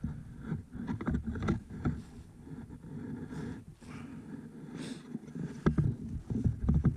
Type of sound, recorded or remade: recorded